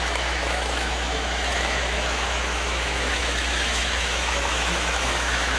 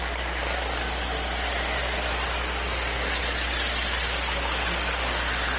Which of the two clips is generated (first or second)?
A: first